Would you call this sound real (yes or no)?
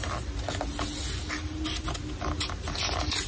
yes